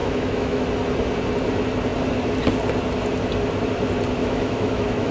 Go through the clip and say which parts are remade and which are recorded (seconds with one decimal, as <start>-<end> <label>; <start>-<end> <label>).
0.0-0.6 remade; 0.6-4.2 recorded; 4.2-5.1 remade